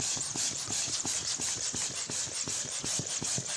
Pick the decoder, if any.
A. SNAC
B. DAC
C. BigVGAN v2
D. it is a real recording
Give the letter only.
C